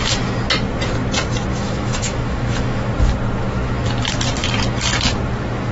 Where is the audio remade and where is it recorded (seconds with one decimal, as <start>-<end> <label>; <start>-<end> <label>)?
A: 0.0-1.5 recorded; 1.5-2.9 remade; 2.9-5.7 recorded